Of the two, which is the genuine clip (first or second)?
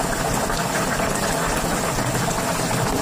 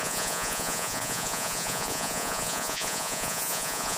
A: first